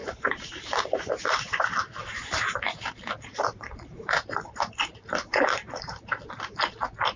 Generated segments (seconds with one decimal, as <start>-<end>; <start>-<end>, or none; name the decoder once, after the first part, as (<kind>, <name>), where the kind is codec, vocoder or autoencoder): 0.0-1.1 (vocoder, BigVGAN v2); 2.0-6.2